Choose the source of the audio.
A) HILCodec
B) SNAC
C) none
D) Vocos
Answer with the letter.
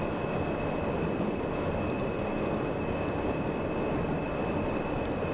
C